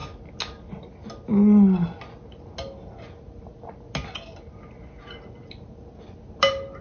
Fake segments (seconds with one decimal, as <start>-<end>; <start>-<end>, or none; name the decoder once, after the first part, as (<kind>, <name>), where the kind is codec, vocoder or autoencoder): none